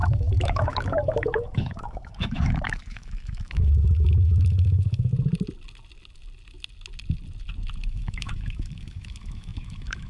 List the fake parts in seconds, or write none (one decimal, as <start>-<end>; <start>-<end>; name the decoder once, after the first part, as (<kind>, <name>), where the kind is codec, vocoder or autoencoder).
0.0-5.1 (autoencoder, DAC-VAE); 7.9-10.1